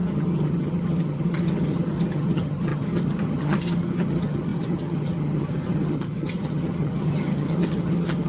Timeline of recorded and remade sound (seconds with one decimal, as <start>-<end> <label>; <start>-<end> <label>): 0.0-8.3 remade

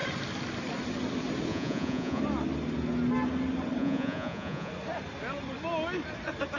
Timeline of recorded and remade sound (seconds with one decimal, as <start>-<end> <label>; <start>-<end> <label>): 0.0-1.5 recorded; 1.5-2.2 remade; 2.2-3.8 recorded; 3.8-4.7 remade; 4.7-6.6 recorded

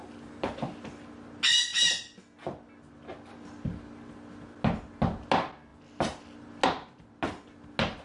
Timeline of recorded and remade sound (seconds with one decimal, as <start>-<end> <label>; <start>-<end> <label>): 0.0-5.7 recorded; 5.7-6.6 remade; 6.6-8.0 recorded

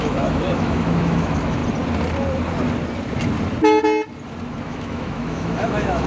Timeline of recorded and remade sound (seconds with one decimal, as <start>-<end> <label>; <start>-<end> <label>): 0.0-1.6 remade; 1.6-4.6 recorded; 4.6-6.1 remade

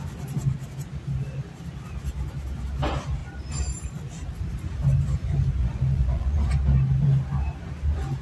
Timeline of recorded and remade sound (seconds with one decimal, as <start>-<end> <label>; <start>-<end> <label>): 0.0-5.6 recorded; 5.6-6.5 remade; 6.5-8.2 recorded

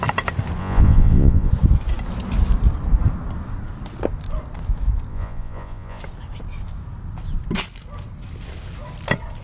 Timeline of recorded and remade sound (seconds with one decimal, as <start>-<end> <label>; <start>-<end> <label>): 0.0-0.6 recorded; 0.6-1.5 remade; 1.5-5.1 recorded; 5.1-6.0 remade; 6.0-9.4 recorded